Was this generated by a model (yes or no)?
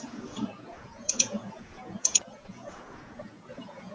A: yes